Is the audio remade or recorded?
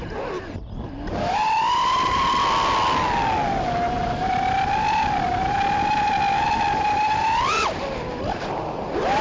recorded